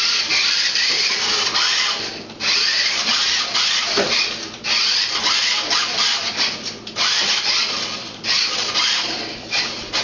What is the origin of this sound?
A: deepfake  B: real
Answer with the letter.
A